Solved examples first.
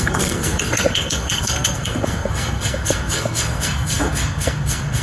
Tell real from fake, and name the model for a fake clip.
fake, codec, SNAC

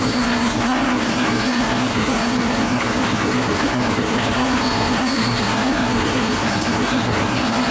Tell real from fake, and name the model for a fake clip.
fake, codec, SNAC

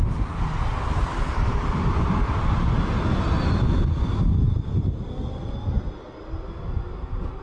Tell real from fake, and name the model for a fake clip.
real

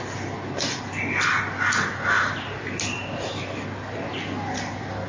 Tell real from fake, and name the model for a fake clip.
real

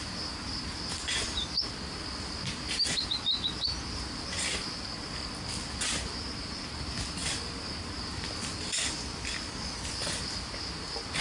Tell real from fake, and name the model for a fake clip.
real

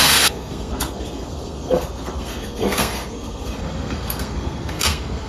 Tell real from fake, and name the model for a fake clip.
fake, codec, SNAC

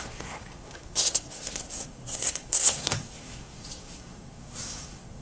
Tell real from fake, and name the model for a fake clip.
fake, codec, SNAC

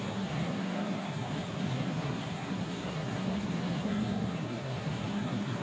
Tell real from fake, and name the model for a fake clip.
fake, codec, SNAC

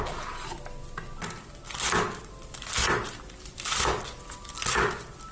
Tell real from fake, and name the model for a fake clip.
real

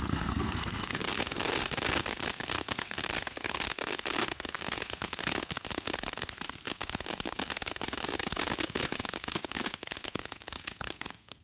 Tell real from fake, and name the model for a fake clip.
fake, codec, SNAC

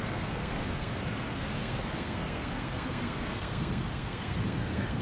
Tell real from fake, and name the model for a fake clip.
fake, codec, SNAC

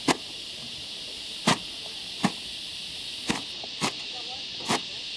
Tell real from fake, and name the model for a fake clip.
real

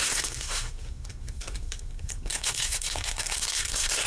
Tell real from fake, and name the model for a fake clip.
fake, codec, SNAC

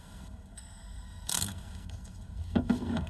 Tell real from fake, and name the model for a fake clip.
fake, codec, SNAC